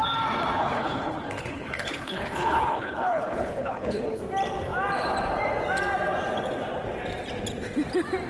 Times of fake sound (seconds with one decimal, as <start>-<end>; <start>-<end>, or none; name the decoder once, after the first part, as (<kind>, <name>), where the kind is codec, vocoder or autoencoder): 0.6-4.2 (codec, HILCodec)